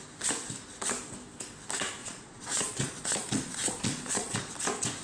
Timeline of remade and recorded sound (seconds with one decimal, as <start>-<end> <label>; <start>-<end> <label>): 0.0-2.0 recorded; 2.0-4.5 remade; 4.5-5.0 recorded